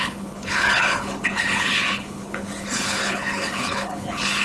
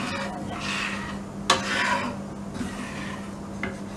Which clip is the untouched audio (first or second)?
second